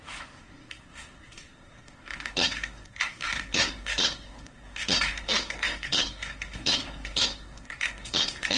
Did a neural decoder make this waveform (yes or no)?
yes